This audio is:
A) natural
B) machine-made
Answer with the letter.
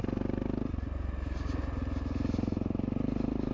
A